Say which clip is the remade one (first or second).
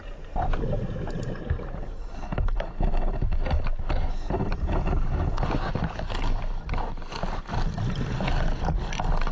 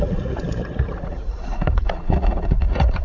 second